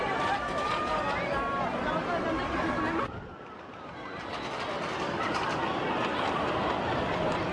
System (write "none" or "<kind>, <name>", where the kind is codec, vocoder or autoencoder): none